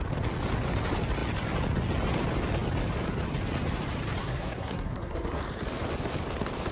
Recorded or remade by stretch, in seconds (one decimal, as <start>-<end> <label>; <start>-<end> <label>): 0.0-4.2 recorded; 4.2-5.4 remade; 5.4-6.7 recorded